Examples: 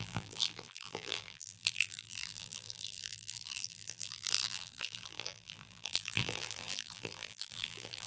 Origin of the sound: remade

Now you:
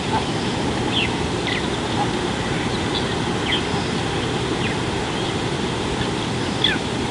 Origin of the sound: recorded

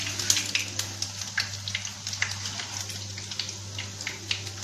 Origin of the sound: recorded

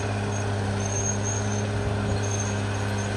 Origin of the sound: recorded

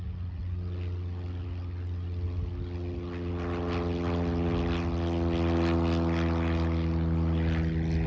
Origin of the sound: recorded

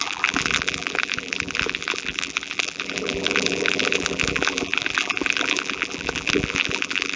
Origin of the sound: remade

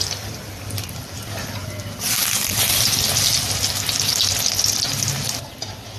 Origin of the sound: recorded